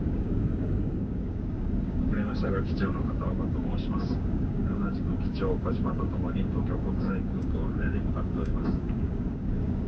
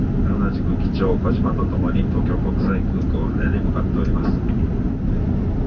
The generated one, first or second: first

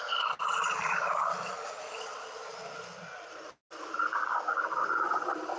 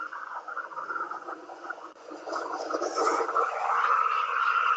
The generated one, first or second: second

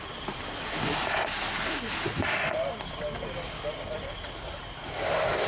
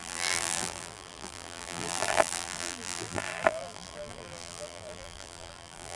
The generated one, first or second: second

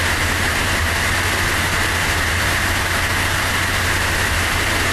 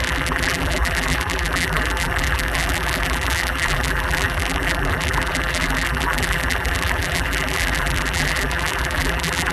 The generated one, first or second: second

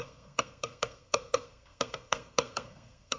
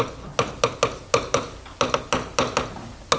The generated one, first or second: first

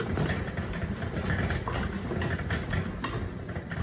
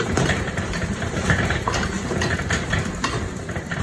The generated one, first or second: second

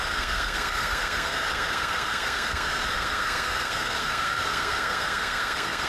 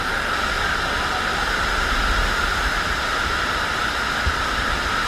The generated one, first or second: first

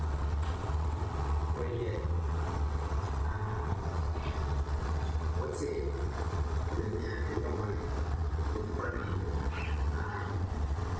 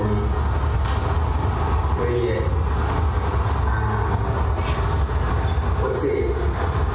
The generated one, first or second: first